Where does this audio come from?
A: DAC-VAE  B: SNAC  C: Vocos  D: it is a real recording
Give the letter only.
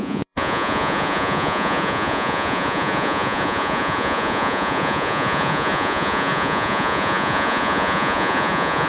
C